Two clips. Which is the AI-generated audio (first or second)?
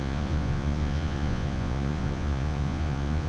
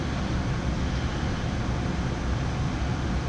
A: first